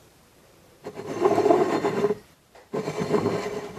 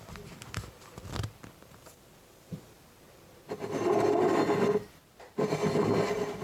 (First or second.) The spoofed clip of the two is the first